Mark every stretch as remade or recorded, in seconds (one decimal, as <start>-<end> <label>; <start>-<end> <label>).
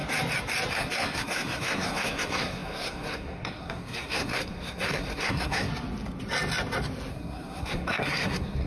0.0-0.7 recorded; 0.7-5.7 remade; 5.7-7.1 recorded; 7.1-8.7 remade